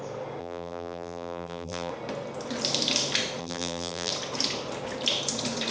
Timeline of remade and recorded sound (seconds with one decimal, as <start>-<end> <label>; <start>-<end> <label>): 0.0-0.4 recorded; 0.4-1.9 remade; 1.9-3.4 recorded; 3.4-4.1 remade; 4.1-5.7 recorded